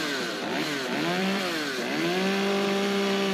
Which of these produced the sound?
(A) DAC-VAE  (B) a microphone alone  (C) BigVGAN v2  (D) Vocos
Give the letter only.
C